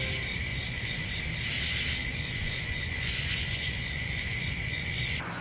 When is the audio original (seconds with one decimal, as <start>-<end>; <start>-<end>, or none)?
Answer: 0.0-0.5; 1.2-2.0